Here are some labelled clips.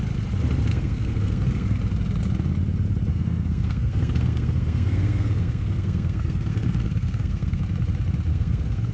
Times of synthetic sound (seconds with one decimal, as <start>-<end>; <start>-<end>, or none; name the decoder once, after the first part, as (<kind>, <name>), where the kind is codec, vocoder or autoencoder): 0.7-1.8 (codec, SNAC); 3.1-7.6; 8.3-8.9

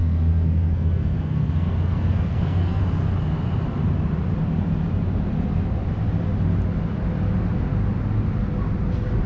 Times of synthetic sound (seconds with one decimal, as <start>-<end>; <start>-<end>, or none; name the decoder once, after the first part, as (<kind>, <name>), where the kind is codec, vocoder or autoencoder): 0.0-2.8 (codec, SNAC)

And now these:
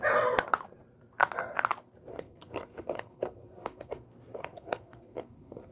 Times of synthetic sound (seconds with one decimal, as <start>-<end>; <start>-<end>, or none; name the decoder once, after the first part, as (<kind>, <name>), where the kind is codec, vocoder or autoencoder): 2.1-5.7 (codec, SNAC)

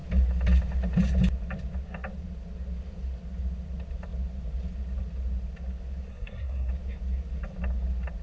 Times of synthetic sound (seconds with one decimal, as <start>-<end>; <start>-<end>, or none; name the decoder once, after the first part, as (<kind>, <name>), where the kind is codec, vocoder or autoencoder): 6.1-6.7 (codec, SNAC)

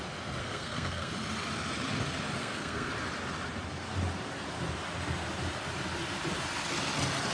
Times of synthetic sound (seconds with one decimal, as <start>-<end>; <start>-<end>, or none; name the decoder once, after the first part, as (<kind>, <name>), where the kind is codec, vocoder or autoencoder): 0.4-1.1 (codec, SNAC); 2.4-2.9

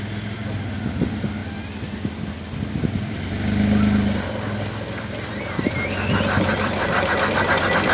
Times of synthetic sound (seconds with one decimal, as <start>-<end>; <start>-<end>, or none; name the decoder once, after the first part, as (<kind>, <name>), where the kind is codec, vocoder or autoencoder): none